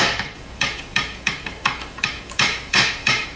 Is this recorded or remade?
remade